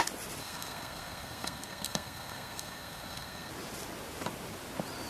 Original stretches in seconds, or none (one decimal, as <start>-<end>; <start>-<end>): 0.0-0.4; 3.5-5.1